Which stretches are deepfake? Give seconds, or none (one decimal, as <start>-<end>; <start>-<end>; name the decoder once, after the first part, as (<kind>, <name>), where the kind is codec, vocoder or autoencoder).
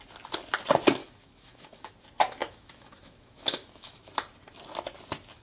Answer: 1.0-1.9 (autoencoder, DAC-VAE); 2.4-4.1